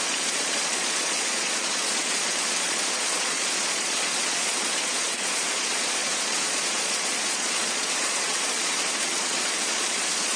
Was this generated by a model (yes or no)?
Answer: yes